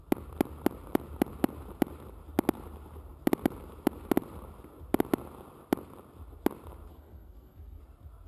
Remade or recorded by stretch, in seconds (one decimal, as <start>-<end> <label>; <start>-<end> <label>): 0.0-6.9 recorded; 6.9-7.8 remade; 7.8-8.3 recorded